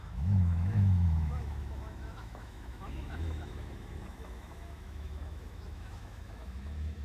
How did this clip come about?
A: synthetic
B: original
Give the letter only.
A